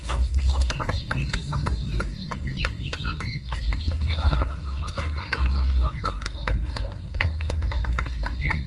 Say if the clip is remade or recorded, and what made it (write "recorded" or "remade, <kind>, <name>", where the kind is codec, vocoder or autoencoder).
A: remade, codec, SNAC